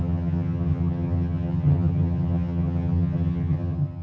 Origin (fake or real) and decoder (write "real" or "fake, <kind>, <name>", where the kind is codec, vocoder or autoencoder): fake, vocoder, HiFi-GAN